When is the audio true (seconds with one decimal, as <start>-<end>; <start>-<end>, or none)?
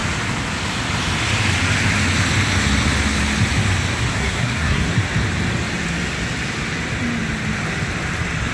0.0-4.1; 4.9-8.5